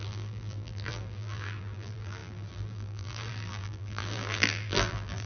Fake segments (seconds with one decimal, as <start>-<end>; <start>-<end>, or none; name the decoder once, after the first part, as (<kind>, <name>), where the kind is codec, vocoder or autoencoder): 0.0-5.3 (vocoder, BigVGAN v2)